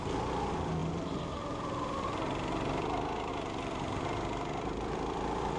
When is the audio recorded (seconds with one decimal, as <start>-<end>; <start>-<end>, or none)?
0.0-5.6